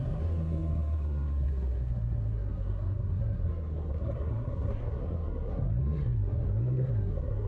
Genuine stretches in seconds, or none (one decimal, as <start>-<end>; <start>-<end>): none